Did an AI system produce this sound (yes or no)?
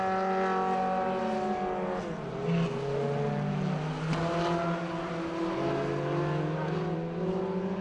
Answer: no